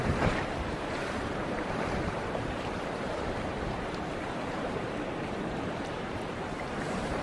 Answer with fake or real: fake